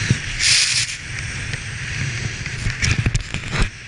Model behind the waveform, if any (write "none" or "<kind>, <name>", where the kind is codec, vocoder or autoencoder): none